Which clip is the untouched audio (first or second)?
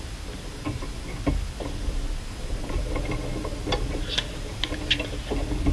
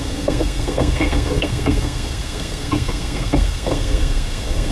first